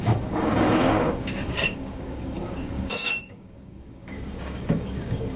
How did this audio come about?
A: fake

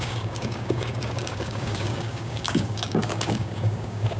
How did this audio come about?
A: fake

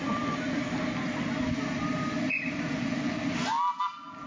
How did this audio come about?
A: real